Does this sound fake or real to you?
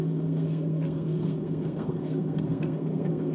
fake